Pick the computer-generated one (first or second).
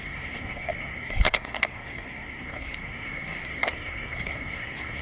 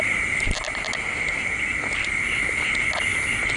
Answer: first